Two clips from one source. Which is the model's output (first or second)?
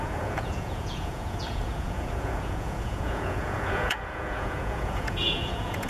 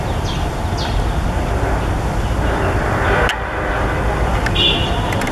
first